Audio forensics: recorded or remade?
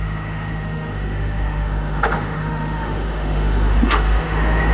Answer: remade